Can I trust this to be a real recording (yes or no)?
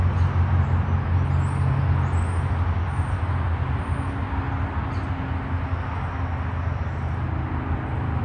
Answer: yes